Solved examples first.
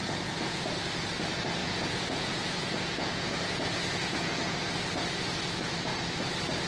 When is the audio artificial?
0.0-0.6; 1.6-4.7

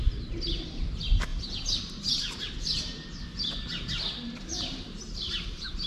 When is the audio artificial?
1.3-2.2; 4.5-5.9

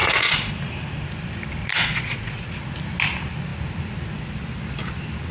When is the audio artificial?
0.0-0.5; 1.6-2.5

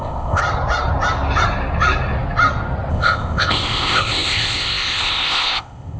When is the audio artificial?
0.0-0.4; 2.9-6.0

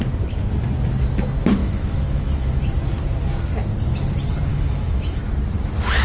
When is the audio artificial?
1.6-2.6; 4.5-5.2

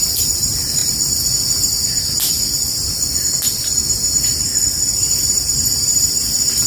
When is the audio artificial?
0.0-0.8; 4.8-6.7